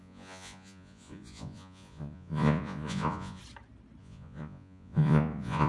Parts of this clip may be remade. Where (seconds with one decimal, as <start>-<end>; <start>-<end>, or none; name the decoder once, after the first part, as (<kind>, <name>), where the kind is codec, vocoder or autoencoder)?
0.0-3.4 (vocoder, Vocos); 4.0-5.7